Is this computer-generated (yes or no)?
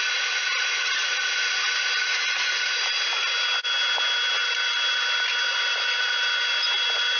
no